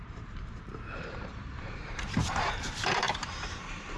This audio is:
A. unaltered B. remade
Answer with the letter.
B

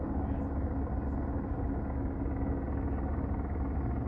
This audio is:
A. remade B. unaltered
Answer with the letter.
B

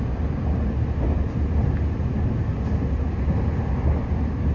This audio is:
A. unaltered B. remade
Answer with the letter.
A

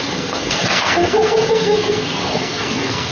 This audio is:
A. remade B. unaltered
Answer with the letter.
A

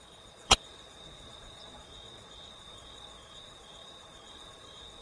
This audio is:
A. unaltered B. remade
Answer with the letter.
B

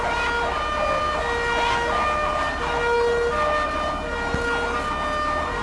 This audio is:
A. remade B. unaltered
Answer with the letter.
B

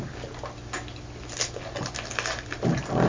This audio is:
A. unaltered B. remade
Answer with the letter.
A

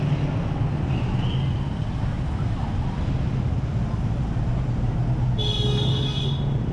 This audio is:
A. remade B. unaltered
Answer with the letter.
B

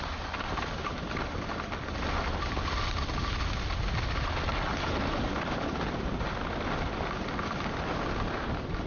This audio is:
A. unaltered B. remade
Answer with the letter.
A